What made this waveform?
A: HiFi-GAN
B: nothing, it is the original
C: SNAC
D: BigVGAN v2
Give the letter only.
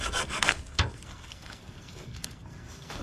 C